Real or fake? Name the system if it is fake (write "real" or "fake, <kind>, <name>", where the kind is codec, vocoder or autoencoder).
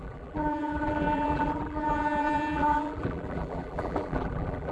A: fake, vocoder, BigVGAN v2